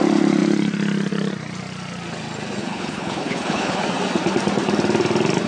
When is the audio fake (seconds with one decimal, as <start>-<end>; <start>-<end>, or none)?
2.6-3.8